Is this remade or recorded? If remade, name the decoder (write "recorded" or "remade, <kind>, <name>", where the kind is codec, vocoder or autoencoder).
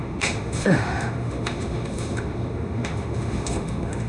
remade, autoencoder, DAC-VAE